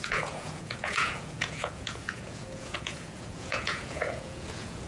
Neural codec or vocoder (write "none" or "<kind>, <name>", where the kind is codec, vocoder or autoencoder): vocoder, Vocos